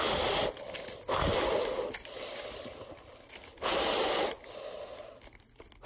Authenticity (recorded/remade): recorded